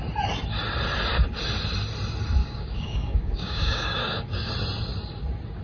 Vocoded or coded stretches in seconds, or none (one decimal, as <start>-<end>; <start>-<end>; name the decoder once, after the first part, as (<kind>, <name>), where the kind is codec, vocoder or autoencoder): 2.4-4.5 (codec, DAC)